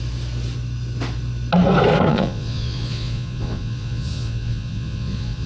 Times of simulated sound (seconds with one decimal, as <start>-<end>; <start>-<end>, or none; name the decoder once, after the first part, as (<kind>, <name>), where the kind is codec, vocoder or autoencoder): 2.1-5.5 (vocoder, Vocos)